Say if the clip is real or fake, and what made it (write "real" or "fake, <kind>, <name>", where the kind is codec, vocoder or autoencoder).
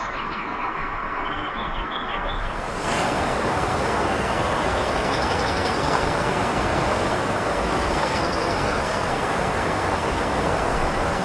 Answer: fake, codec, SNAC